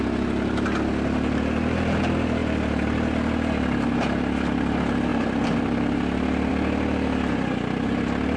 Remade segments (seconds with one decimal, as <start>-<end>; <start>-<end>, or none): none